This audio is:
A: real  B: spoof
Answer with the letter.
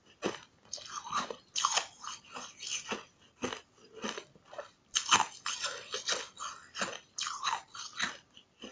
A